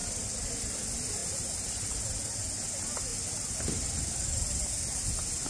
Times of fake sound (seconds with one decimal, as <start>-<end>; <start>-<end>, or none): 0.0-0.5; 1.2-1.7; 3.1-4.7